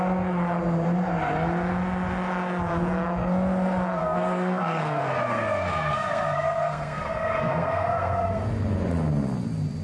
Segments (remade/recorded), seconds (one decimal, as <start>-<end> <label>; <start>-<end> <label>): 0.0-4.0 recorded; 4.0-8.4 remade; 8.4-9.8 recorded